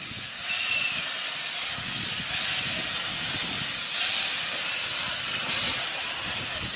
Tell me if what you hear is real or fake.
real